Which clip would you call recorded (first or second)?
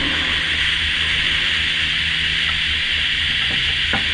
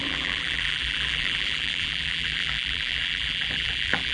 first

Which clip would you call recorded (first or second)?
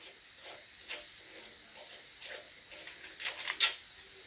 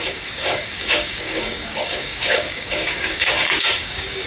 first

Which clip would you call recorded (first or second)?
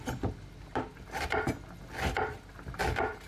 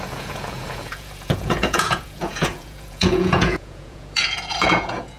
first